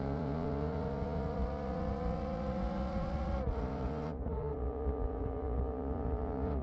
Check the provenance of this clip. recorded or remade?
remade